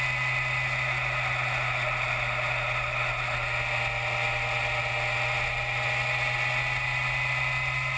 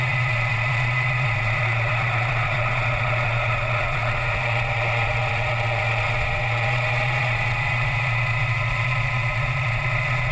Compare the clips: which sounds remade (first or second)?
second